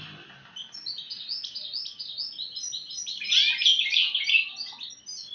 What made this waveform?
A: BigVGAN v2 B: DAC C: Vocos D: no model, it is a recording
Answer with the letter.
D